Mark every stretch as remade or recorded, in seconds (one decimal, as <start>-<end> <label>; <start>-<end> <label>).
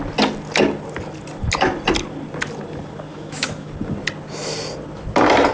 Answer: 0.0-3.1 recorded; 3.1-3.7 remade; 3.7-5.5 recorded